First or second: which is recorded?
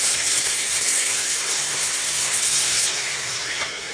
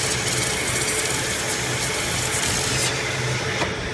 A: second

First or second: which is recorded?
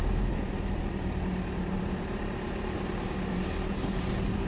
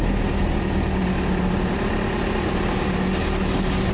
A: second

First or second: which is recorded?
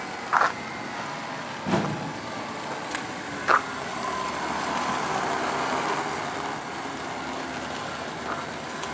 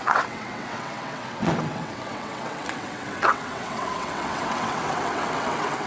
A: first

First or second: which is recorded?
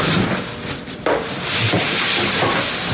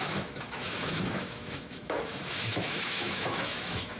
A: first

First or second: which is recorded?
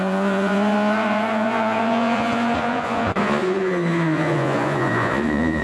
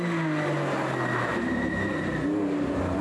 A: second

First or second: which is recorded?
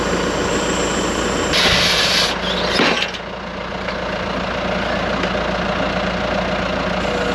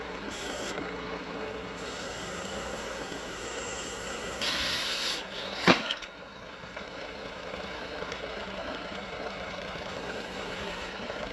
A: first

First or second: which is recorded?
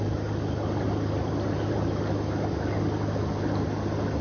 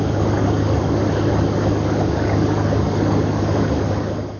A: first